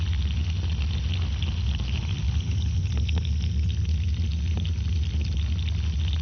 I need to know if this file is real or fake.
real